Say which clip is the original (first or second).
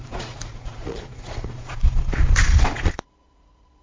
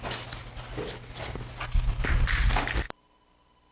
second